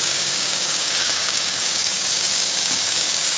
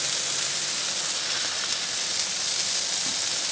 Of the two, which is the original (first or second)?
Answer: second